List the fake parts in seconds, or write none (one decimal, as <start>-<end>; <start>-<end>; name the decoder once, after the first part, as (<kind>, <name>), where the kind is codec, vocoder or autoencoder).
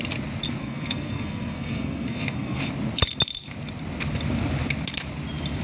0.6-2.6 (codec, SNAC)